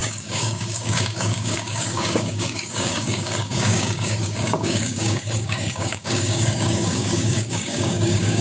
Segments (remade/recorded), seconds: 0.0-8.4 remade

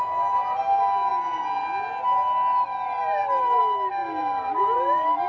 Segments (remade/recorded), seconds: 0.0-3.0 recorded; 3.0-3.6 remade; 3.6-4.0 recorded; 4.0-5.3 remade

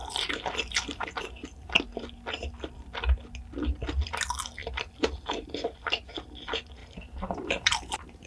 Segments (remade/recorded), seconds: 0.0-1.8 remade; 1.8-4.6 recorded; 4.6-5.9 remade; 5.9-6.8 recorded; 6.8-8.3 remade

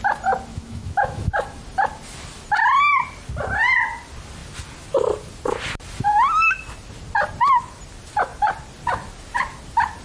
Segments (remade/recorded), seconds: 0.0-0.5 recorded; 0.5-1.3 remade; 1.3-10.0 recorded

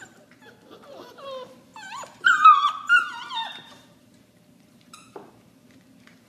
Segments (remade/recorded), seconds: 0.0-1.7 recorded; 1.7-5.3 remade; 5.3-6.3 recorded

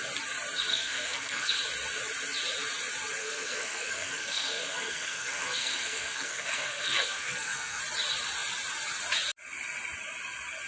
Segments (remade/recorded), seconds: 0.0-0.7 recorded; 0.7-1.6 remade; 1.6-3.2 recorded; 3.2-7.8 remade; 7.8-10.7 recorded

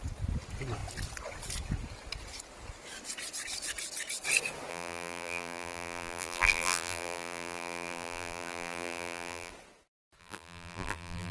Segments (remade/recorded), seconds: 0.0-4.7 recorded; 4.7-9.5 remade; 9.5-10.2 recorded; 10.2-11.3 remade